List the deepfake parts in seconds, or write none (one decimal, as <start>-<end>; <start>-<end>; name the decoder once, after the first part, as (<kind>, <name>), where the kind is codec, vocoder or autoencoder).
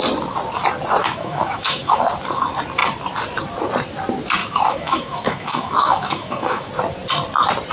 1.0-2.0 (autoencoder, DAC-VAE); 4.4-6.7